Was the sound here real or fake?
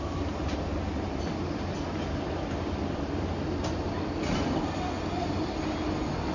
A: real